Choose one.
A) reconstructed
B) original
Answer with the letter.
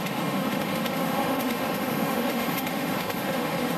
A